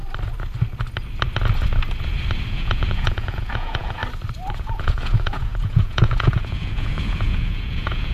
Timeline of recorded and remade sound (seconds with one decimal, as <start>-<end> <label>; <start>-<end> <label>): 0.0-2.5 recorded; 2.5-4.0 remade; 4.0-4.5 recorded; 4.5-8.1 remade